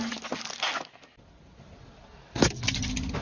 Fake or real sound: real